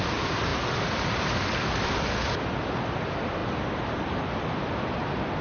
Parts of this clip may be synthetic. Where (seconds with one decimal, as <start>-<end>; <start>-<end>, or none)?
none